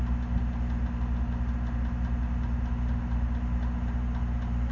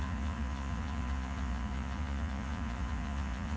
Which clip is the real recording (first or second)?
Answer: first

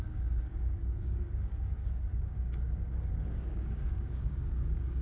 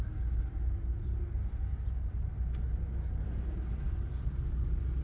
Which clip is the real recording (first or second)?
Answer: second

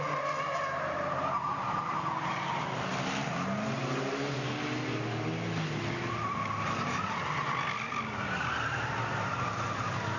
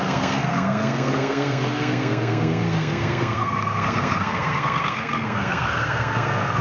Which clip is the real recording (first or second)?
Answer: first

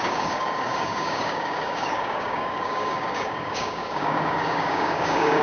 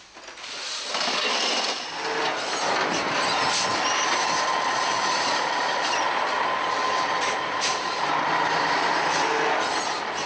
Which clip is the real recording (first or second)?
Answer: second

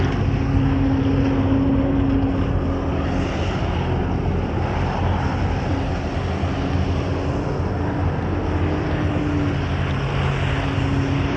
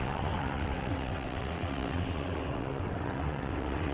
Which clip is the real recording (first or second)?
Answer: first